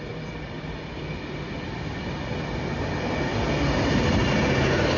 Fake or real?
real